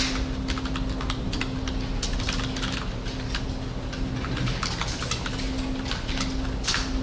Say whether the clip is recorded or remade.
recorded